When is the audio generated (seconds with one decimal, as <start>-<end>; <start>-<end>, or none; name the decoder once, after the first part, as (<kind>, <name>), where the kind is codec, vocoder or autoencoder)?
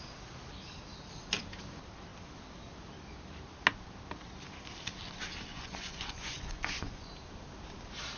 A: 5.5-7.1 (vocoder, Vocos)